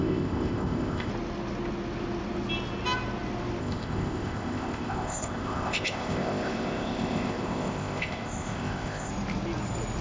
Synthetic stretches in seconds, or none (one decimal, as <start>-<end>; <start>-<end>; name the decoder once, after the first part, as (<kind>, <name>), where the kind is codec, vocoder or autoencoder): 0.0-1.1 (codec, ZipCodec); 3.6-9.1